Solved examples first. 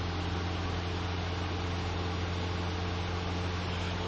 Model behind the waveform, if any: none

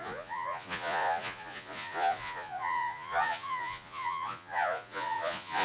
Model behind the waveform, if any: vocoder, Vocos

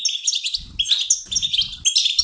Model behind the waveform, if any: none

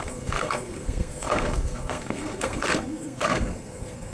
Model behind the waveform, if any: codec, SNAC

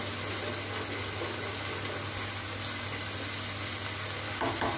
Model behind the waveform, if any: none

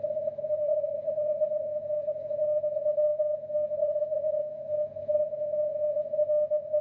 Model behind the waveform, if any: autoencoder, DAC-VAE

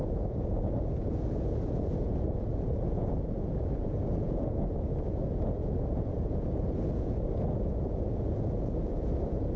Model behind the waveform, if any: vocoder, Vocos